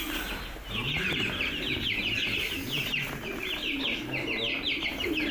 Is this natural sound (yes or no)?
yes